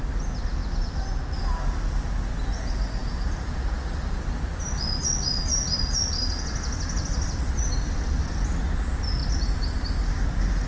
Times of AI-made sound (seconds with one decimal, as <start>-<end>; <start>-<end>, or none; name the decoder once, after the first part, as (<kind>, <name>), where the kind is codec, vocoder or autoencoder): 3.0-3.8 (vocoder, Vocos)